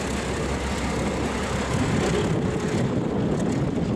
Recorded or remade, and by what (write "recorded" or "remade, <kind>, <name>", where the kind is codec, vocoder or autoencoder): recorded